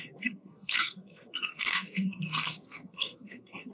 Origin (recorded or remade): remade